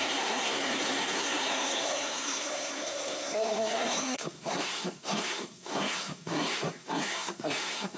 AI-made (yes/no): yes